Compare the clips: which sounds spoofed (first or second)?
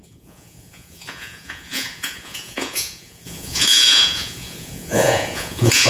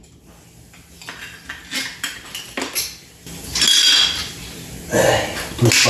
first